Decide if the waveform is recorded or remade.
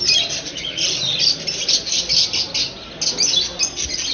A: recorded